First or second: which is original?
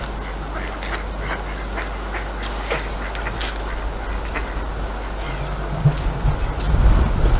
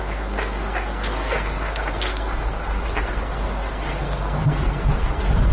first